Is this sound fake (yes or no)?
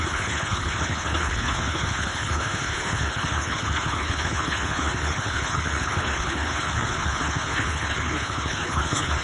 yes